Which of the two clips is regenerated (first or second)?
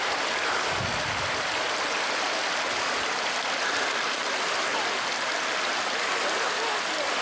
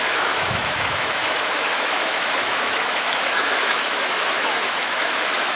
second